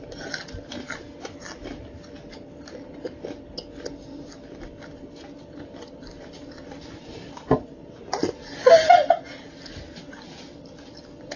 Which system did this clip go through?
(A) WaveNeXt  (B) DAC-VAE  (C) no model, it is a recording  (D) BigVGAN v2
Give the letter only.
C